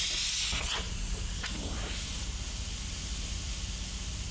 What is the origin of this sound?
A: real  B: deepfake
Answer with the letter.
A